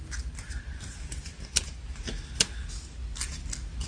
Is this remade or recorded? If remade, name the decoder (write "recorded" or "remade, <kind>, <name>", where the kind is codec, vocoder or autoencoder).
recorded